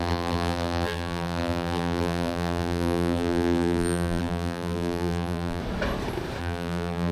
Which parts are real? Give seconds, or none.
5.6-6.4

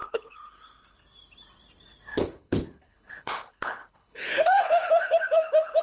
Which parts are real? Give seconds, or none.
1.0-2.1